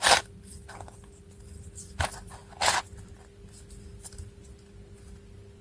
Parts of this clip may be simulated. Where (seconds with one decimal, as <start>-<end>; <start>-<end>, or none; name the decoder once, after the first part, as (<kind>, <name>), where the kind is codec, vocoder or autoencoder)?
none